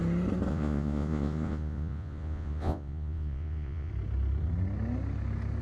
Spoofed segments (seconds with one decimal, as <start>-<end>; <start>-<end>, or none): 0.5-3.9